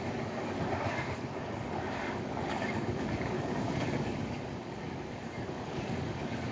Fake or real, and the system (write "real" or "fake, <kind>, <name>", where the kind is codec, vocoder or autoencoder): fake, codec, DAC